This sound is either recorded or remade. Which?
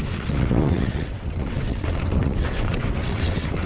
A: remade